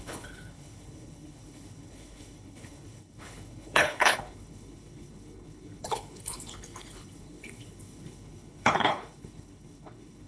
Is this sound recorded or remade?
remade